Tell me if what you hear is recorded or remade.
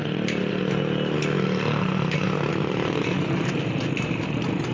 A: recorded